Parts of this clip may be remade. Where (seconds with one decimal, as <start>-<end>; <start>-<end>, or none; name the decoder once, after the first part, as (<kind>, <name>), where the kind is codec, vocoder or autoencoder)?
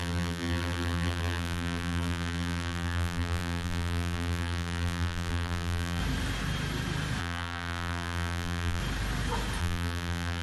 0.0-6.0 (vocoder, BigVGAN v2); 7.2-8.8; 9.6-10.4